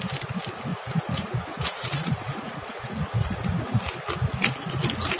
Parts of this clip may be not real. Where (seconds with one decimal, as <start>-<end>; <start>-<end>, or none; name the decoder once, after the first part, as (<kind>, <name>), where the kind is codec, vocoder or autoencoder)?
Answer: 0.7-3.8 (vocoder, Vocos)